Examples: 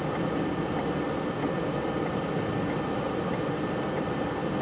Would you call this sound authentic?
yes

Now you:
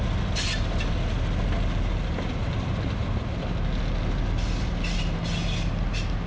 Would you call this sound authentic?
yes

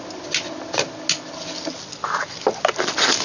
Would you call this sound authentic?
yes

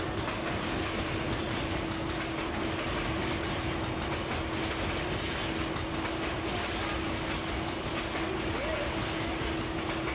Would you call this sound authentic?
yes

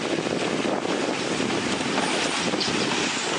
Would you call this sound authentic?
yes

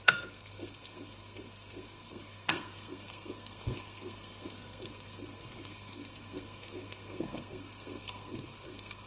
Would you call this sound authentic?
no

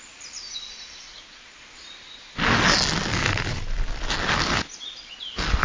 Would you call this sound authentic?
yes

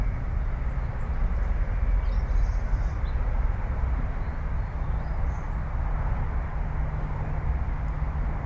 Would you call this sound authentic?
yes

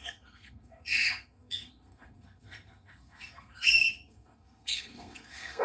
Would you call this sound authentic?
no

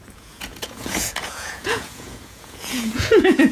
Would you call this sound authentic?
no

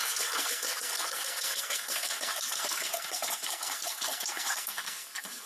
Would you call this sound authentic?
no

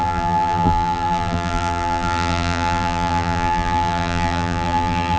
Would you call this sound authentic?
no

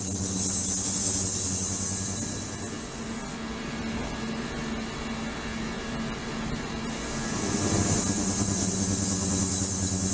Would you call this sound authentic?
yes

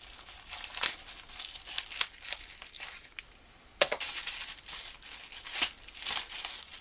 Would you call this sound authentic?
yes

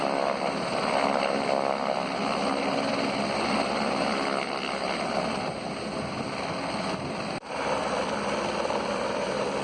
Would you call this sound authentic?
yes